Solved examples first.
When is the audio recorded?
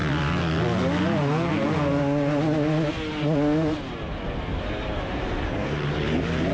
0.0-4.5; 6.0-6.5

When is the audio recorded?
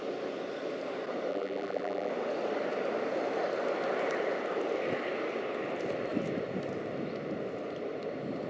0.0-1.3; 2.1-8.5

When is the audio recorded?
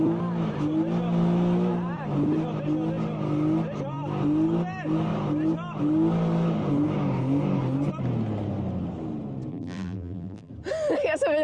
0.0-9.5; 10.5-11.4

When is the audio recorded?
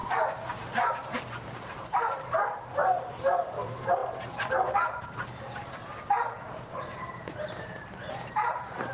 0.0-0.9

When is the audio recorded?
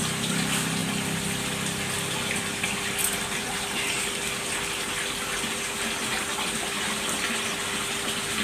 0.0-8.4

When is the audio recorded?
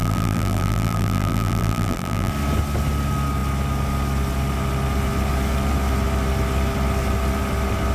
2.3-7.9